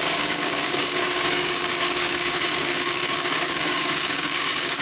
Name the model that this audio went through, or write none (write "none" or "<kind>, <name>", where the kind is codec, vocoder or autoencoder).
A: codec, DAC